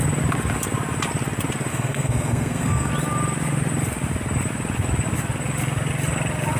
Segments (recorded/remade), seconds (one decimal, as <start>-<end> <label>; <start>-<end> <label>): 0.0-1.7 recorded; 1.7-2.9 remade; 2.9-6.6 recorded